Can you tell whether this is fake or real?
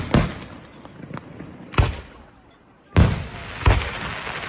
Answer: real